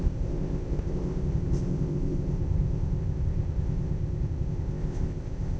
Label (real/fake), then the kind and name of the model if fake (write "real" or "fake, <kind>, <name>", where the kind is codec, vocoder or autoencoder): fake, codec, ZipCodec